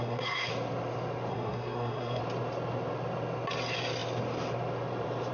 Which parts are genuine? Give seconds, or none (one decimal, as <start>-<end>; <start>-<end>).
0.5-1.3; 2.2-5.3